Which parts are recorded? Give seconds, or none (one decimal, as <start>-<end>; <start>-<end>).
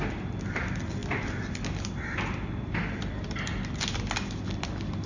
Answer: 0.0-5.1